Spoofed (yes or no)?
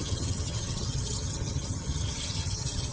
yes